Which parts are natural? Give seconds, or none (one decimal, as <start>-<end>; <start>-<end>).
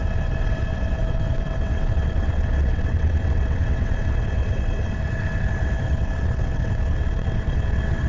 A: none